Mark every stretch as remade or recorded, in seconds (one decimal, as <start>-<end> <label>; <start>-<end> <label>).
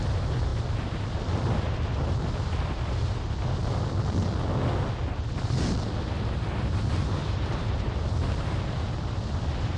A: 0.0-3.6 remade; 3.6-6.5 recorded; 6.5-9.8 remade